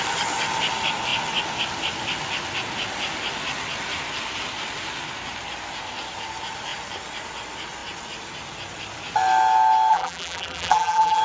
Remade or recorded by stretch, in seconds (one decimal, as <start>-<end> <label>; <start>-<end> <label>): 0.0-9.9 recorded; 9.9-11.2 remade